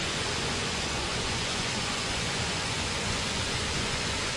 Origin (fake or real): fake